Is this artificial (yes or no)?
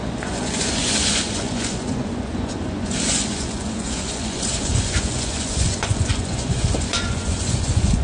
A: yes